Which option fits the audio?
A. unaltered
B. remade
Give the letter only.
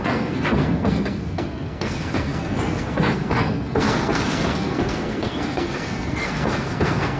B